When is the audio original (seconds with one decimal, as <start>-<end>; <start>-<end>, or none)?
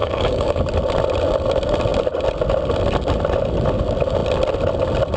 0.6-5.2